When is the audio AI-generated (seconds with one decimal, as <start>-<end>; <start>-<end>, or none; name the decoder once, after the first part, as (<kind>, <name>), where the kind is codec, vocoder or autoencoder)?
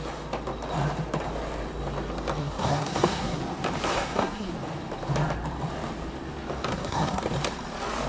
2.4-3.4 (codec, SNAC); 3.9-4.5; 6.7-7.2